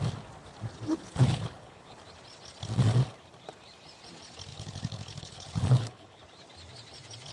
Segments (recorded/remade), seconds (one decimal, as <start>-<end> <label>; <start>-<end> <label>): 0.0-0.9 recorded; 0.9-2.0 remade; 2.0-4.5 recorded; 4.5-6.2 remade; 6.2-7.3 recorded